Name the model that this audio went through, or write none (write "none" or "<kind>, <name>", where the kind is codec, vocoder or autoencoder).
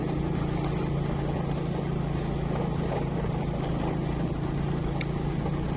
none